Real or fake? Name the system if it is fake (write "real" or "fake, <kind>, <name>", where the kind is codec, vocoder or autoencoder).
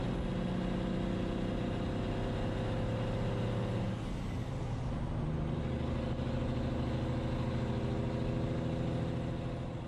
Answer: real